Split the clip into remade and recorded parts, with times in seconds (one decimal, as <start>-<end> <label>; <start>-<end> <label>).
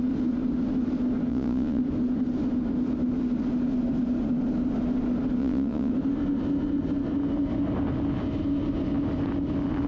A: 0.0-1.3 recorded; 1.3-1.8 remade; 1.8-5.4 recorded; 5.4-5.9 remade; 5.9-9.9 recorded